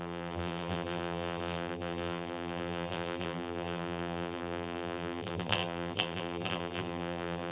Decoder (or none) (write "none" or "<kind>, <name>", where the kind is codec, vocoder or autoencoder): vocoder, BigVGAN v2